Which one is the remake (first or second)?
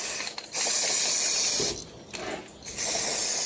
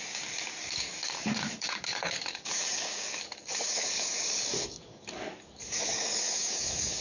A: second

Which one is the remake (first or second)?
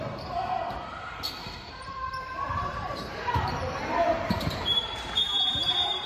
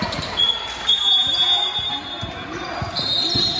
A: first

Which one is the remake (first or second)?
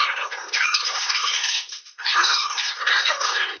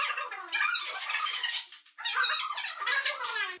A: first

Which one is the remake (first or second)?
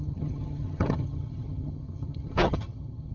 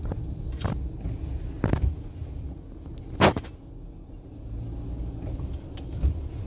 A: first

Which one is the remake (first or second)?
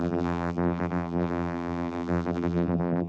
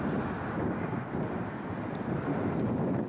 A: first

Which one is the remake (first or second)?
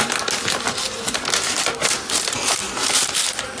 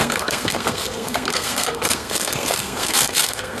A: second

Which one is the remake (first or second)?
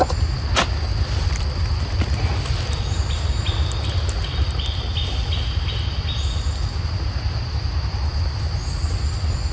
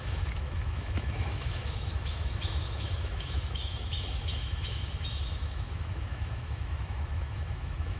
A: second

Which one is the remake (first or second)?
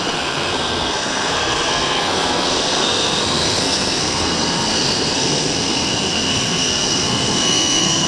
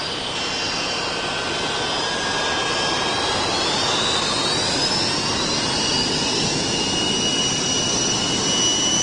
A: first